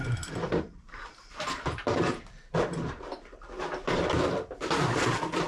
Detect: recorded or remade remade